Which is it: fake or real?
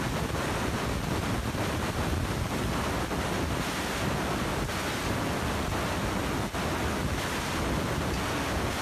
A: real